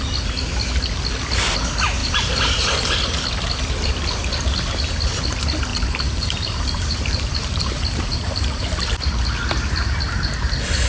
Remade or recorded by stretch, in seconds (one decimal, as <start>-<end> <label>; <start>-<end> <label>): 0.0-2.0 recorded; 2.0-2.7 remade; 2.7-5.7 recorded; 5.7-8.6 remade; 8.6-10.9 recorded